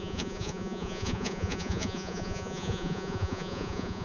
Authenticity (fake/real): fake